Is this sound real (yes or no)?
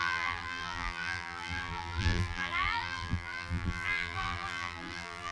no